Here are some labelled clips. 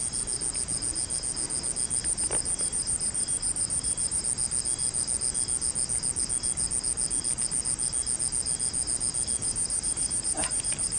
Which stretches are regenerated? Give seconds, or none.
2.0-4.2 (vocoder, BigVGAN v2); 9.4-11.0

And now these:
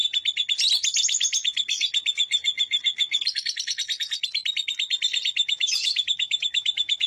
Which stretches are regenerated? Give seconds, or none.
5.4-7.1 (autoencoder, DAC-VAE)